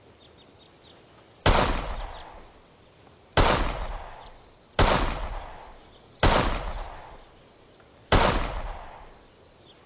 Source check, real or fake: real